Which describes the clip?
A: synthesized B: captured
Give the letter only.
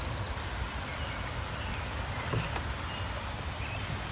B